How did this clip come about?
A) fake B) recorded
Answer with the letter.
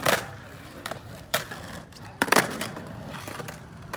A